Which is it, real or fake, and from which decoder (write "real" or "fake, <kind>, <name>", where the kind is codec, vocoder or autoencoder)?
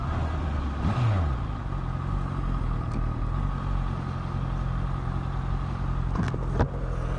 real